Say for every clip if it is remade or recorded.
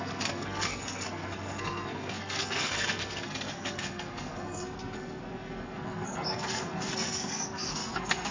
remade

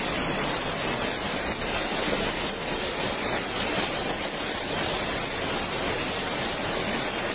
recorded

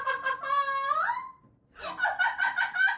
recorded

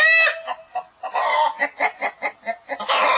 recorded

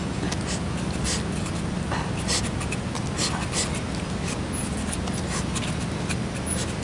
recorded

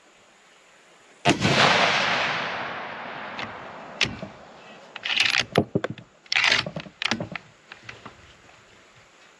recorded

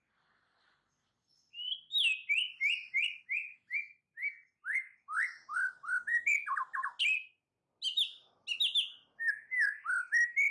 recorded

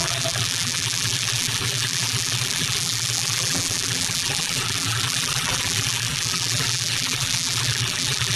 remade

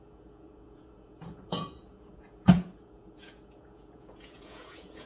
remade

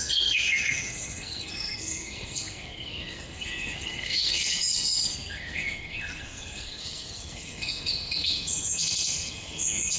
remade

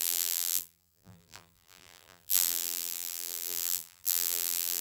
remade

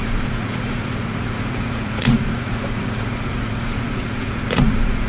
remade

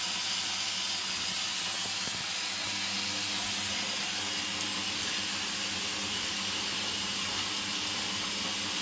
recorded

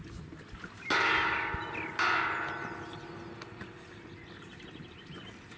recorded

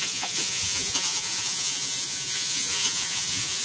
remade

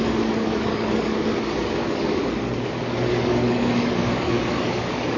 remade